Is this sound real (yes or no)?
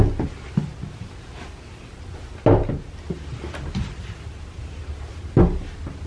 yes